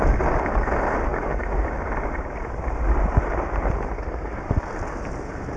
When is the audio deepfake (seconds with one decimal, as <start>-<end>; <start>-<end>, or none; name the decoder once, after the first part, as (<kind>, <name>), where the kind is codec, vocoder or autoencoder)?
none